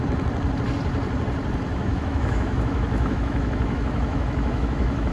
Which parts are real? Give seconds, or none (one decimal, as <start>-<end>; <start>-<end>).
0.0-1.7